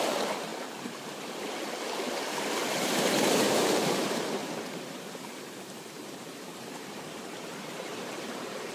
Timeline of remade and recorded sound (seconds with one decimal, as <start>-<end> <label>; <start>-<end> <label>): 0.0-8.7 remade